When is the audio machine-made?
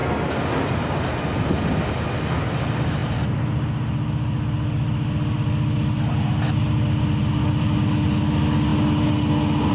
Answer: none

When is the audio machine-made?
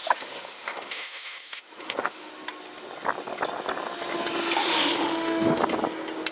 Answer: 0.0-2.3; 4.6-5.6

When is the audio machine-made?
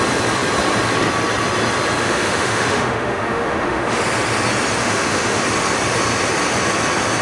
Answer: 2.0-4.0; 4.8-5.4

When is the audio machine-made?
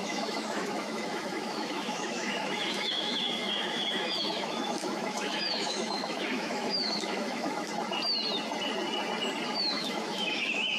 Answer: 0.0-7.7; 9.5-10.8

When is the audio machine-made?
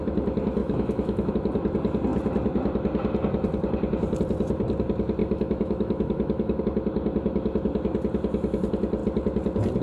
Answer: 0.6-1.3; 5.2-6.6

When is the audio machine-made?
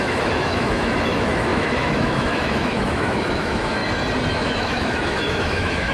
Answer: 0.0-3.8; 4.3-5.9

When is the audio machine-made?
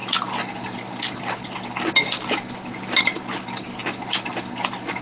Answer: none